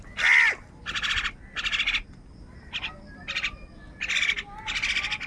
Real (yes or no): yes